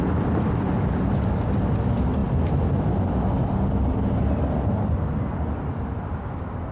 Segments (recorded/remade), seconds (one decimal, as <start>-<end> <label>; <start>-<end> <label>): 0.0-6.7 recorded